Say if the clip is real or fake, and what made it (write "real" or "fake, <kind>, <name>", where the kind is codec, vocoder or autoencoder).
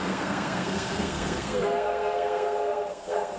fake, codec, SNAC